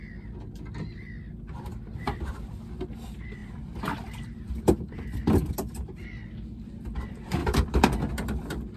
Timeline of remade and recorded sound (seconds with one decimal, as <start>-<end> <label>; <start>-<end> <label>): 0.0-3.4 recorded; 3.4-5.5 remade; 5.5-7.4 recorded; 7.4-8.0 remade; 8.0-8.8 recorded